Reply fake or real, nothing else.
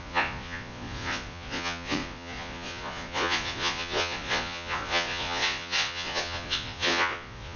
fake